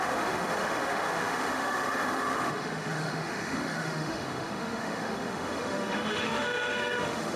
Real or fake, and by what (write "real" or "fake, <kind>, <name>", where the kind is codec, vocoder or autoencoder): fake, autoencoder, DAC-VAE